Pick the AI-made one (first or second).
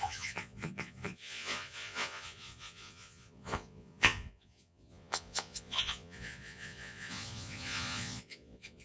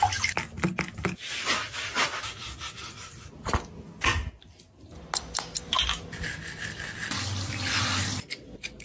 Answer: first